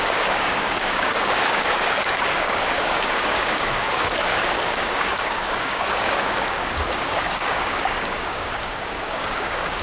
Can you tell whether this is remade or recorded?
remade